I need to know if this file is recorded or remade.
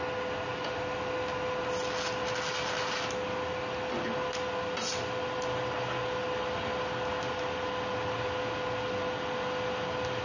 recorded